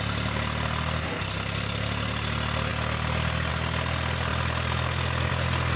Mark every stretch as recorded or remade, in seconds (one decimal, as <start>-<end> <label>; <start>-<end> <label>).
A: 0.0-5.8 recorded